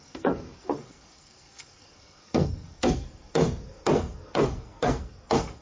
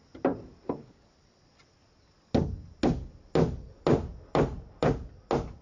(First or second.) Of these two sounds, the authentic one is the second